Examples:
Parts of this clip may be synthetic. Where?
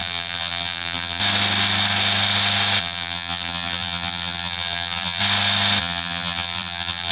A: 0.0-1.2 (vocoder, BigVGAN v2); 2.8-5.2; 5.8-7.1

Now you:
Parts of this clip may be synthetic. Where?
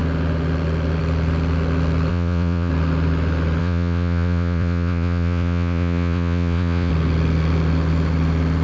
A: 2.1-2.7 (vocoder, Vocos); 3.6-6.9